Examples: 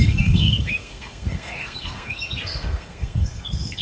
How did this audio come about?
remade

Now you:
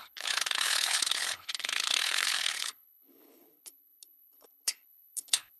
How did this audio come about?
remade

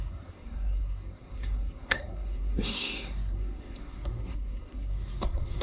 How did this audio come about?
remade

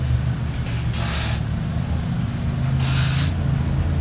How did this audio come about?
recorded